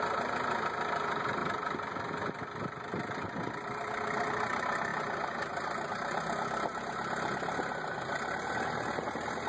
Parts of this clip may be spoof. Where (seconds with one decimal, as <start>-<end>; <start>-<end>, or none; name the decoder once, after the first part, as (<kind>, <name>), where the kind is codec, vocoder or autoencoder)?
none